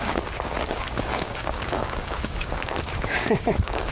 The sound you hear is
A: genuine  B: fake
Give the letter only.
B